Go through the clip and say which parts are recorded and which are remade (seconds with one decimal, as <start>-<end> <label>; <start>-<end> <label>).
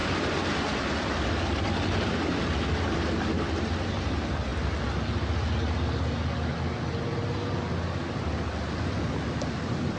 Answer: 0.0-10.0 recorded